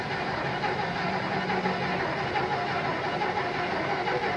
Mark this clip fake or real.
real